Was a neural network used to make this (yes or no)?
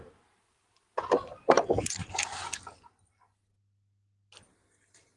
no